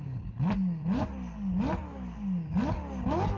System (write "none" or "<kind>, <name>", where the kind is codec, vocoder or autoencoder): none